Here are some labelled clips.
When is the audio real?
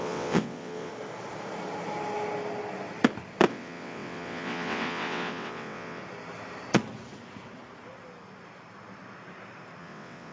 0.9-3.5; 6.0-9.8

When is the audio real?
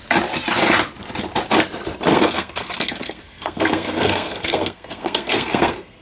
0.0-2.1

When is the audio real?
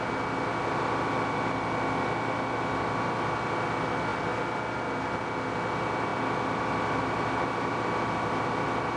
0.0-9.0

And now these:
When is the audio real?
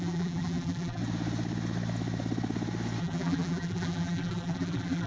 1.0-3.0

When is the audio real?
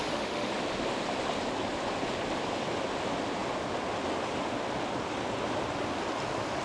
0.5-6.6